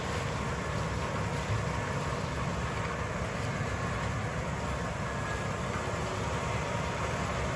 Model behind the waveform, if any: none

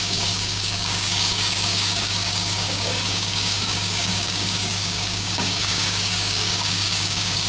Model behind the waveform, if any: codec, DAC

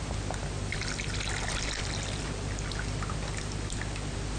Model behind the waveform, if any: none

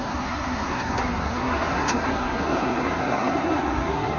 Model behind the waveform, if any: codec, SNAC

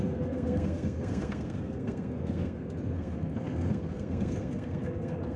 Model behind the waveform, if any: codec, SNAC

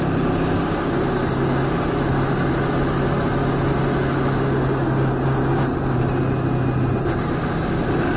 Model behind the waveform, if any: none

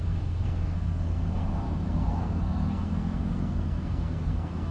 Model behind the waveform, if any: codec, SNAC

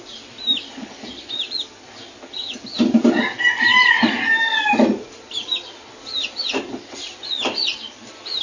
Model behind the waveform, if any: none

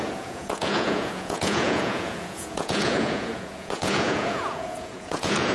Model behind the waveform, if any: vocoder, Vocos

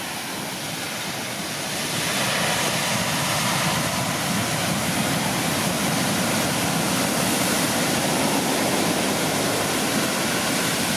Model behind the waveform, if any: none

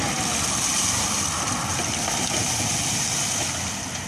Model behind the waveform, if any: none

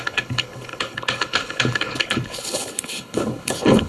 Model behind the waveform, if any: codec, HILCodec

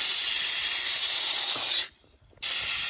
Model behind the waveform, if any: none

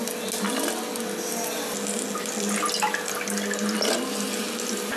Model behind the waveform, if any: none